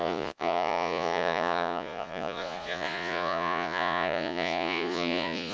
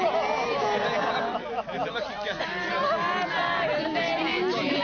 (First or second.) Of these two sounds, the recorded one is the second